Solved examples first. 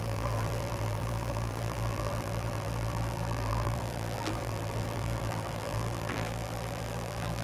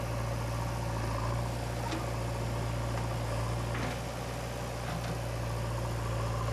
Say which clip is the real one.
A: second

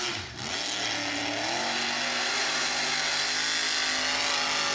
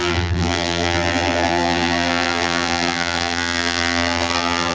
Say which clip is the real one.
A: first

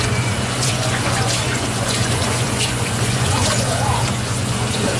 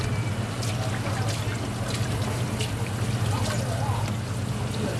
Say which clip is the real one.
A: second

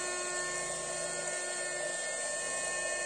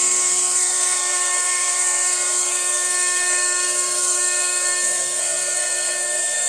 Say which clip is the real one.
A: first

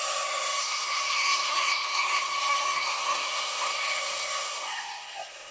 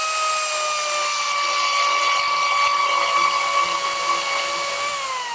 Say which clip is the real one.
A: second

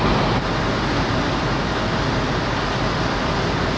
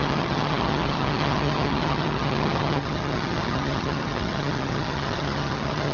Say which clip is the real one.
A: first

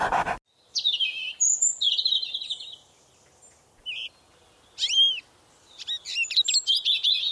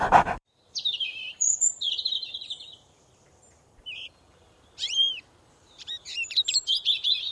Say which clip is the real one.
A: first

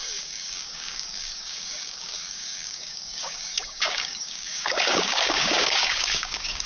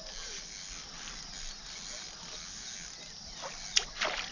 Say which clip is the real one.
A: second